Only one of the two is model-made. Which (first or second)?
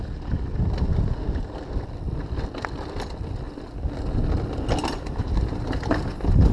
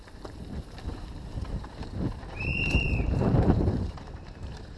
second